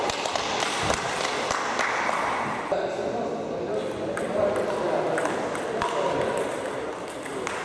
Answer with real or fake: real